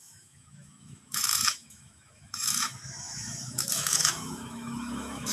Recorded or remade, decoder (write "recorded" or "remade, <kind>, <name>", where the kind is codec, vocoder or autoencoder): remade, autoencoder, DAC-VAE